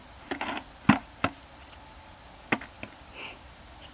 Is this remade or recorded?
recorded